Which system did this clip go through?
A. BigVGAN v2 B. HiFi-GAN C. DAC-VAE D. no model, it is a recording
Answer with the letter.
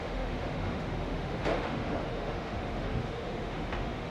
C